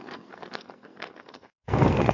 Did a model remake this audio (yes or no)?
yes